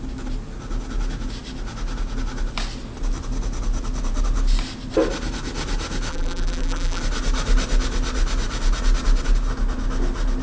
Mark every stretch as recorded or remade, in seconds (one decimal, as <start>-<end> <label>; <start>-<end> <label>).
0.0-6.1 recorded; 6.1-7.0 remade; 7.0-10.4 recorded